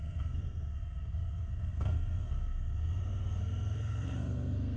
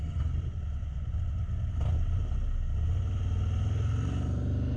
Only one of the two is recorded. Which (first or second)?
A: second